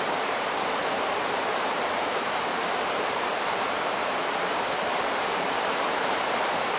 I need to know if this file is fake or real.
fake